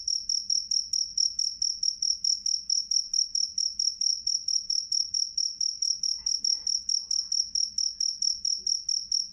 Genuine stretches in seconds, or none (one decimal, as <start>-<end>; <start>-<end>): 0.0-4.1; 6.4-9.3